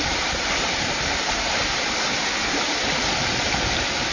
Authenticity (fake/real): real